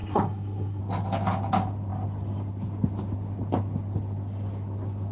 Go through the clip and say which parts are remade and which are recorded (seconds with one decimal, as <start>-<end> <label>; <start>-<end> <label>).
0.0-0.8 remade; 0.8-5.1 recorded